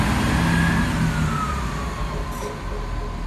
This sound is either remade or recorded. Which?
recorded